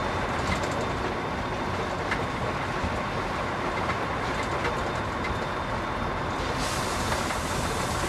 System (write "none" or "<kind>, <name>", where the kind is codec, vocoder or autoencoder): none